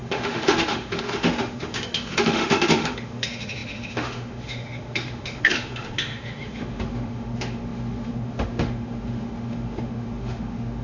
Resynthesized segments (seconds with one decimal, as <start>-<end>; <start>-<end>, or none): 0.0-10.8